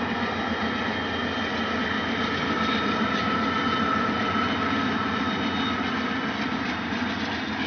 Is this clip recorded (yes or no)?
yes